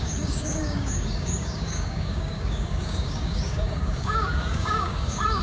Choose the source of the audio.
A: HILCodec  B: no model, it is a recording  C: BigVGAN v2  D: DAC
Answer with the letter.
D